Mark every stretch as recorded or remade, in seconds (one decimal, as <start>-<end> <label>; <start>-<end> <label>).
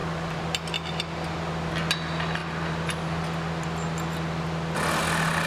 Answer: 0.0-5.5 recorded